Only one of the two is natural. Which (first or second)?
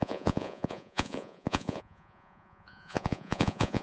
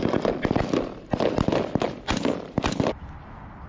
second